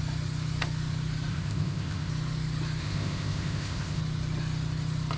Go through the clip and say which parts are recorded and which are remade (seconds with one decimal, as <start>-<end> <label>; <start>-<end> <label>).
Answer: 0.0-1.3 recorded; 1.3-2.1 remade; 2.1-2.8 recorded; 2.8-4.0 remade; 4.0-5.2 recorded